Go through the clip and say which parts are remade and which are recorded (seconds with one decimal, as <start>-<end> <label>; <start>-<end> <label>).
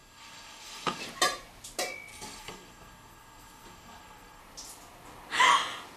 0.0-1.0 remade; 1.0-2.1 recorded; 2.1-4.4 remade; 4.4-6.0 recorded